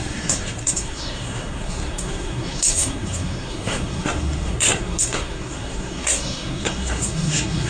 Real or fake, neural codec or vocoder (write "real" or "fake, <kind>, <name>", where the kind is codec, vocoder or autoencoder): fake, codec, SNAC